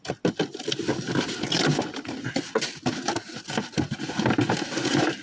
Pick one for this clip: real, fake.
real